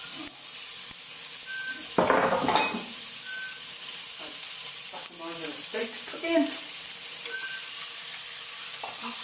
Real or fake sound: real